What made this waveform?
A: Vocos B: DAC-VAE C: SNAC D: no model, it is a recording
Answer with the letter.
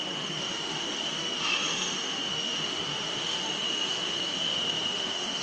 B